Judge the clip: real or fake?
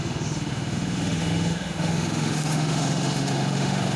fake